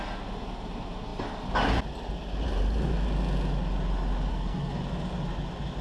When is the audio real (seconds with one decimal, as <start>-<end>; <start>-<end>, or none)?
0.0-4.3; 4.8-5.8